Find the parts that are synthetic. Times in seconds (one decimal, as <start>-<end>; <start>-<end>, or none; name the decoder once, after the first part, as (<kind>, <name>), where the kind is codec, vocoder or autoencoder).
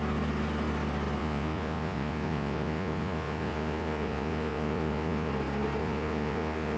1.2-5.3 (vocoder, Vocos); 5.8-6.8